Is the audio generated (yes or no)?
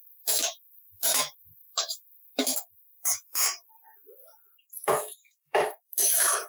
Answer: yes